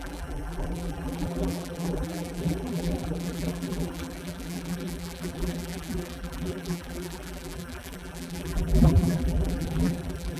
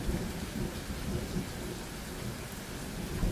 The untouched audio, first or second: second